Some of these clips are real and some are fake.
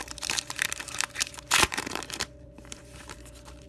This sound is fake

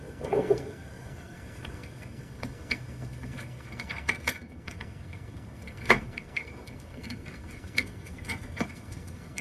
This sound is fake